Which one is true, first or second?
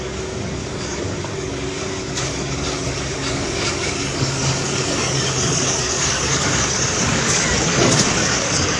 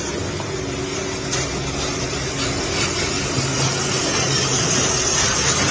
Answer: second